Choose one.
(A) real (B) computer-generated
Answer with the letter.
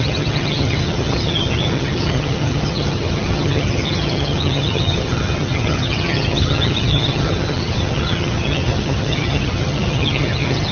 B